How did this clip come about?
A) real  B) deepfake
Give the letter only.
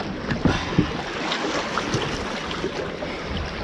A